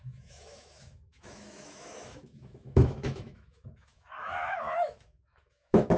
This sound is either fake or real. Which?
fake